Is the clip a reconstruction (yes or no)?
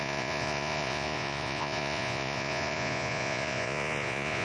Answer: yes